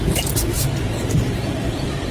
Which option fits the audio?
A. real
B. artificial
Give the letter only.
B